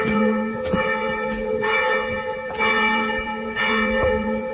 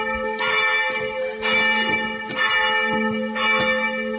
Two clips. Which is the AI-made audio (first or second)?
first